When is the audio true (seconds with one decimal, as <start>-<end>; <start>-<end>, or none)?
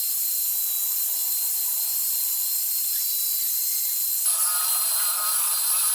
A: 0.0-5.9